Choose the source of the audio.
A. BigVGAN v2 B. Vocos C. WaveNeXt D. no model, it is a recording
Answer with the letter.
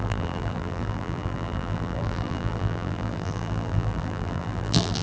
A